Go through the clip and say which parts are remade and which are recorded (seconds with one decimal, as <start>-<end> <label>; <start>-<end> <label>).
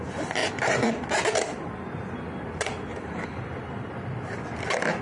0.0-0.4 recorded; 0.4-0.9 remade; 0.9-2.9 recorded; 2.9-3.5 remade; 3.5-5.0 recorded